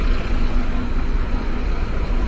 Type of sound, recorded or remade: remade